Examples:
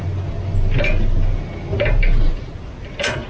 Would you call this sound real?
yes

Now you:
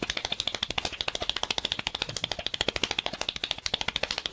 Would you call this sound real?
yes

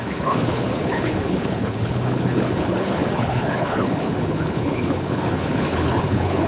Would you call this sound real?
no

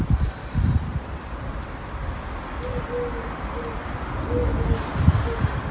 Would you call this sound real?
yes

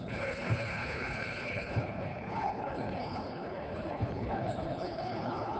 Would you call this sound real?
no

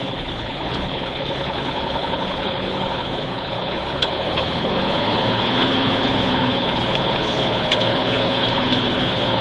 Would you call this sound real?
no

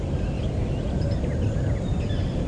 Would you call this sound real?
yes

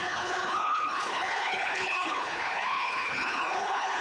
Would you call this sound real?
no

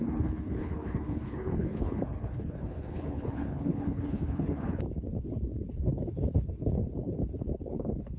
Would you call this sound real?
no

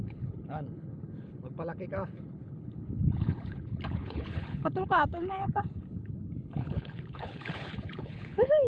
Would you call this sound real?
no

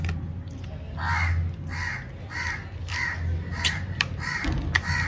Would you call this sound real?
yes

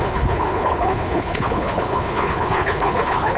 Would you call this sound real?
no